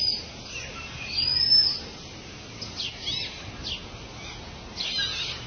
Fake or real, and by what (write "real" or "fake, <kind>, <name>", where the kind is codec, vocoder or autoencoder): real